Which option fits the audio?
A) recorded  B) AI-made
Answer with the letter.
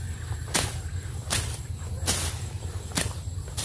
A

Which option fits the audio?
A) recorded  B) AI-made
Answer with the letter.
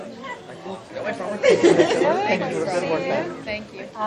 A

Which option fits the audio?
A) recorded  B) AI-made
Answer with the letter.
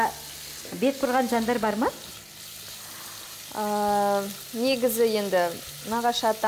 A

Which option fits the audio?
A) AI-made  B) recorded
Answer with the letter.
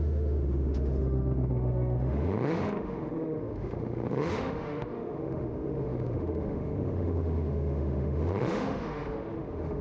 A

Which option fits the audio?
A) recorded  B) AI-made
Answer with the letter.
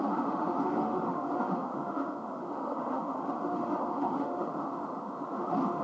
B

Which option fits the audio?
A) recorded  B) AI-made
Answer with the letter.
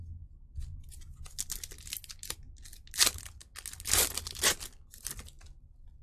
A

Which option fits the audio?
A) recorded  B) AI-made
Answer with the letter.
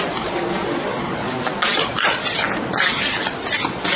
A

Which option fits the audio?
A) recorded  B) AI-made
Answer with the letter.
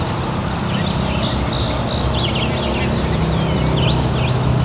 A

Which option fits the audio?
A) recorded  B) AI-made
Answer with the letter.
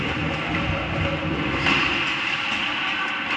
A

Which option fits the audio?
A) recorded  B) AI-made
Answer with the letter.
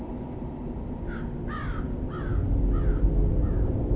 A